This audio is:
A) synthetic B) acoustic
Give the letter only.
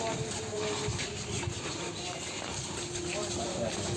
B